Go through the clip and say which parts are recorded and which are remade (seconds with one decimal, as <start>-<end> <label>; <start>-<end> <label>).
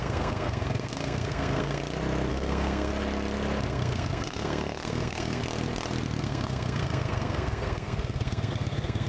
0.0-1.8 remade; 1.8-2.3 recorded; 2.3-2.9 remade; 2.9-3.7 recorded; 3.7-5.4 remade; 5.4-6.2 recorded; 6.2-9.1 remade